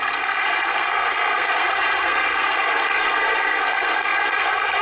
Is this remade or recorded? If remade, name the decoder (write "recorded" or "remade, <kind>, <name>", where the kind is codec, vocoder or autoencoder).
remade, codec, SNAC